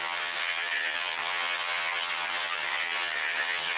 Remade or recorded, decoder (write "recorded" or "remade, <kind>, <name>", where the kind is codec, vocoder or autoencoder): remade, vocoder, HiFi-GAN